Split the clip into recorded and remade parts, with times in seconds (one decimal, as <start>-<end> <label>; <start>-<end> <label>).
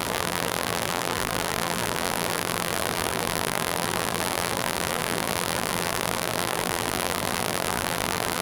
0.0-8.4 remade